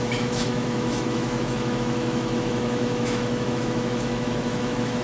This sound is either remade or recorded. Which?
remade